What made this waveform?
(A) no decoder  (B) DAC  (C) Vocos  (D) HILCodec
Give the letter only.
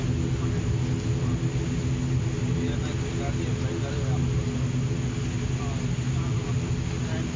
A